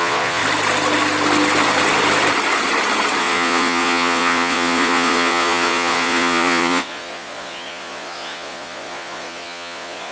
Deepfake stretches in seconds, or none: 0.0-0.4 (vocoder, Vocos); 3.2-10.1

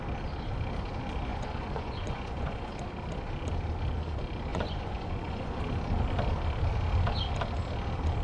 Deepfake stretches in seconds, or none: 1.3-2.7 (vocoder, Vocos); 4.5-5.6